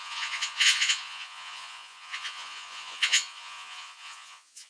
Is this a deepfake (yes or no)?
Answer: yes